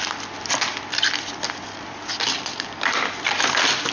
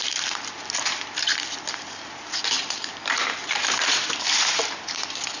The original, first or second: first